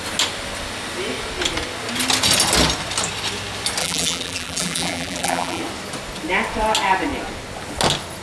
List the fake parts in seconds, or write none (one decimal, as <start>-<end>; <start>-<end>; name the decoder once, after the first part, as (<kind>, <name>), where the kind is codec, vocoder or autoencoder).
3.8-5.6 (vocoder, BigVGAN v2)